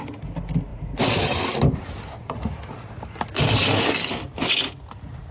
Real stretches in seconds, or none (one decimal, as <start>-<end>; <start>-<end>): 0.0-5.3